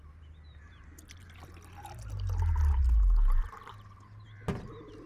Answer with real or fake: real